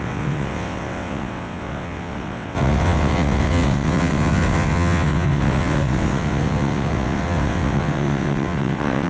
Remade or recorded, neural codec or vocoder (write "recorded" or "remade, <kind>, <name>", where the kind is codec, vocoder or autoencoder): remade, vocoder, WaveNeXt